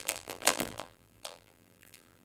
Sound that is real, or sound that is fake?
fake